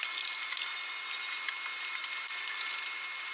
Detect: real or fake real